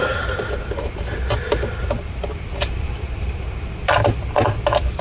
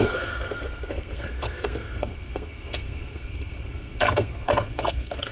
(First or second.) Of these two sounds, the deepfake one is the second